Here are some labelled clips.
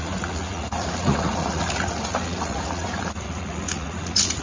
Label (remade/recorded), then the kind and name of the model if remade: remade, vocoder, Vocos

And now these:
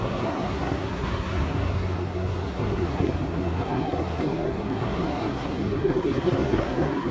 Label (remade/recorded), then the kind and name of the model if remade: remade, codec, SNAC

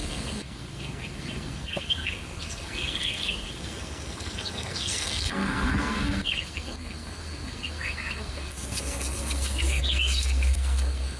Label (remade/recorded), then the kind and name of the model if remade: remade, codec, SNAC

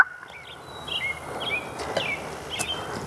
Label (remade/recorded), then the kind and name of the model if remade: recorded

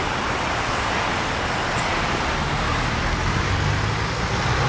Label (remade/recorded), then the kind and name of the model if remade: recorded